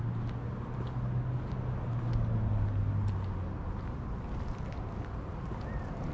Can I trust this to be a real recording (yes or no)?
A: yes